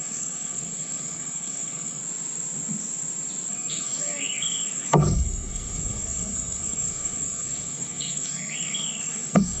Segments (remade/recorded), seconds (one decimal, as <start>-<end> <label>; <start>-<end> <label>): 0.0-2.0 remade; 2.0-3.5 recorded; 3.5-9.6 remade